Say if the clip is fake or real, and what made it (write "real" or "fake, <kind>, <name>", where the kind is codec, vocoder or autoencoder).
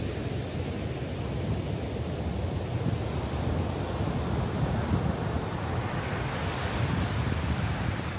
real